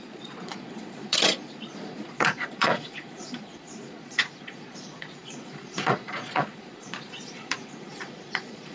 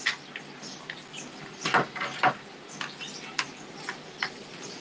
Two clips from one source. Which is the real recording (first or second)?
second